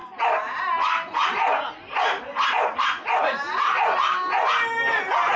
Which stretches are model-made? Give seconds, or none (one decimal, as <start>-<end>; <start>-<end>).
none